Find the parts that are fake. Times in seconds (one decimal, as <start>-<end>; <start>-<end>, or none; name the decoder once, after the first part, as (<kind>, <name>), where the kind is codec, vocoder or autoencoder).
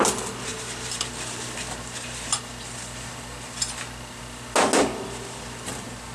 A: none